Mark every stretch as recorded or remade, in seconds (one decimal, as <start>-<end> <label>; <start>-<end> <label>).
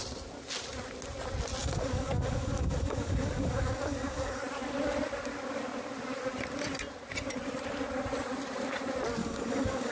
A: 0.0-1.6 recorded; 1.6-4.4 remade; 4.4-9.2 recorded; 9.2-9.9 remade